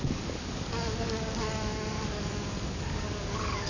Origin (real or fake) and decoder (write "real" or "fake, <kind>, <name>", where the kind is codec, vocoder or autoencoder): fake, codec, DAC